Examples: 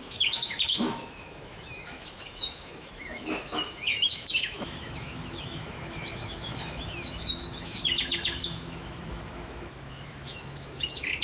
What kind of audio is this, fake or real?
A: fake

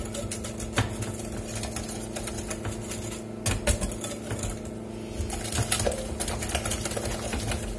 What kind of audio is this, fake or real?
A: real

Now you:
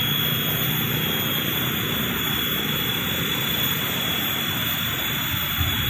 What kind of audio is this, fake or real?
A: real